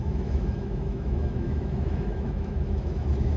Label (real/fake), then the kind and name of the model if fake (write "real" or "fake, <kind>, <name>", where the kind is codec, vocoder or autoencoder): fake, autoencoder, DAC-VAE